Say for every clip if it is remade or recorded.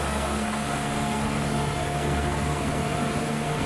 remade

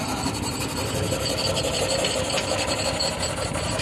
recorded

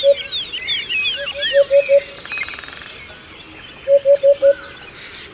recorded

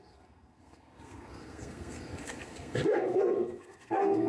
remade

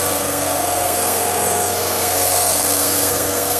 remade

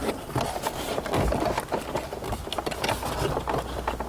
recorded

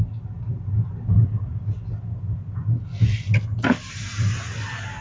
recorded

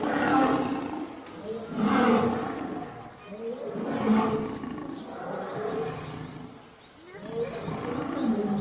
recorded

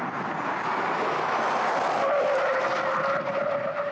recorded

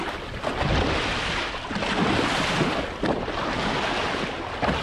recorded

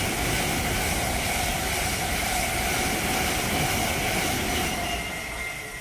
recorded